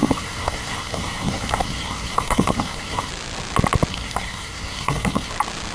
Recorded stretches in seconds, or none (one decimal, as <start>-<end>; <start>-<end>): 3.1-3.9; 5.3-5.7